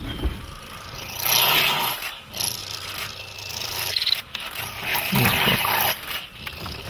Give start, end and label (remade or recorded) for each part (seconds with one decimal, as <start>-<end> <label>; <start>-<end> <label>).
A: 0.0-6.9 recorded